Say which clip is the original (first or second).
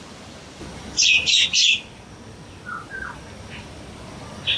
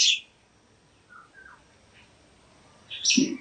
second